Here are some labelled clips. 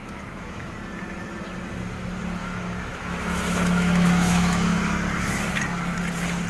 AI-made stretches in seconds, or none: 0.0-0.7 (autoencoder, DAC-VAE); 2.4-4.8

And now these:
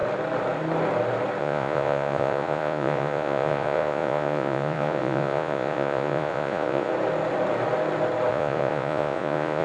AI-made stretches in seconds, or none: 1.4-6.9 (vocoder, Vocos); 8.3-9.6

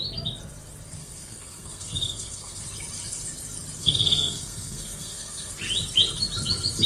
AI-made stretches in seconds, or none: 1.0-2.6 (codec, SNAC); 3.8-5.5

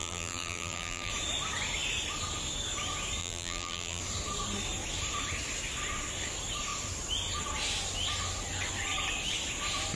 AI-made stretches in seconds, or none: 0.0-1.1 (vocoder, BigVGAN v2); 3.2-4.0

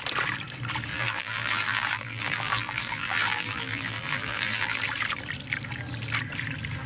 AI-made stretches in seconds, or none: 0.9-4.8 (vocoder, BigVGAN v2)

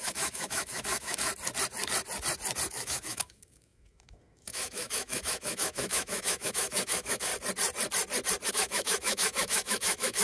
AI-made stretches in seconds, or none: 0.0-1.3 (autoencoder, DAC-VAE); 2.7-7.3; 8.5-10.2

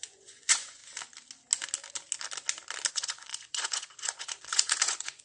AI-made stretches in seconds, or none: 0.0-0.8 (vocoder, Vocos); 2.9-5.2

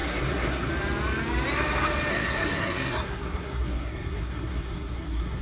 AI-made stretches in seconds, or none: 0.0-0.7 (codec, SNAC); 2.1-5.4